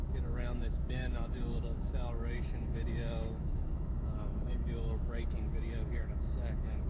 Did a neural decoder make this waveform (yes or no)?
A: yes